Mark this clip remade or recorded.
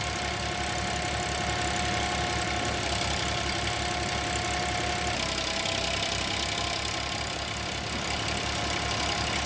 recorded